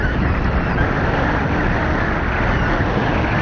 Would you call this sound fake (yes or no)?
no